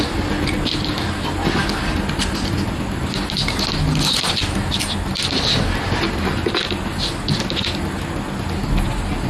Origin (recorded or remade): recorded